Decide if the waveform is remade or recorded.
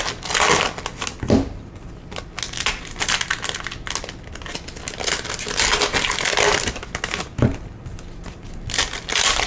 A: recorded